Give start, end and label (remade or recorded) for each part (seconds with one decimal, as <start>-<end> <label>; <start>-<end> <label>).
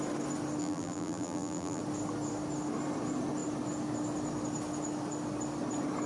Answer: 0.0-0.6 recorded; 0.6-1.8 remade; 1.8-6.1 recorded